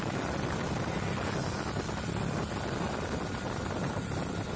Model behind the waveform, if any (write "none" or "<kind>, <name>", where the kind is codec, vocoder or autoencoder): none